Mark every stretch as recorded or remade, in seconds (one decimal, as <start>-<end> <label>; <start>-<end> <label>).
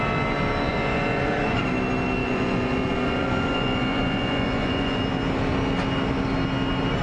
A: 0.0-0.7 recorded; 0.7-1.6 remade; 1.6-2.2 recorded; 2.2-5.0 remade; 5.0-7.0 recorded